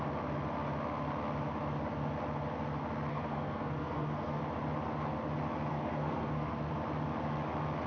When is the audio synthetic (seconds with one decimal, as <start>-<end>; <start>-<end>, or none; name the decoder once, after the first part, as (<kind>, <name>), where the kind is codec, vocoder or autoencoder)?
3.1-4.4 (codec, SNAC); 5.7-6.7